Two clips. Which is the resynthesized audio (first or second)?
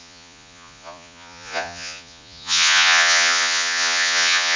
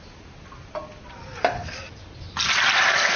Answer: first